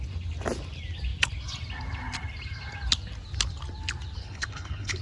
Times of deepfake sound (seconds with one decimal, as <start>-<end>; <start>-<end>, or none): 4.2-5.0